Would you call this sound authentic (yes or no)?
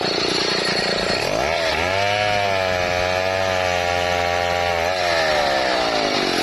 yes